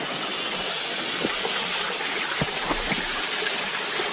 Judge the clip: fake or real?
real